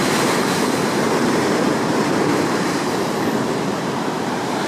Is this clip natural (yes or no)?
no